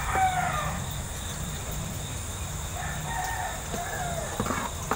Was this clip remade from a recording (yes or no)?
no